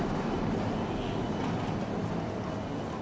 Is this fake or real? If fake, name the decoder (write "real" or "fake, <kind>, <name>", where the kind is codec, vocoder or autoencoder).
real